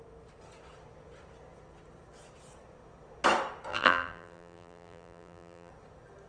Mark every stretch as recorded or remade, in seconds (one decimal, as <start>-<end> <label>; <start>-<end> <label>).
0.0-3.7 recorded; 3.7-5.7 remade; 5.7-6.3 recorded